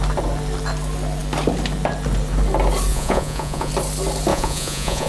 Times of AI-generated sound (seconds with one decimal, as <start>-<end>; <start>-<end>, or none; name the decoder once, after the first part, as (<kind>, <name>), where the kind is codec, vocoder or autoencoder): 2.9-3.7 (vocoder, Vocos); 4.3-5.1